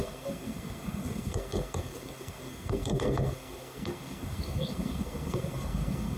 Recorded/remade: remade